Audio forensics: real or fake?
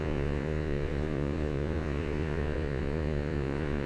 fake